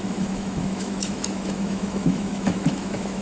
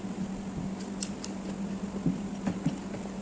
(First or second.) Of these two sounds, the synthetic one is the first